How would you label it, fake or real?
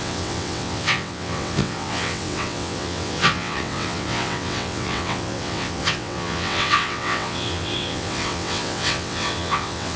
fake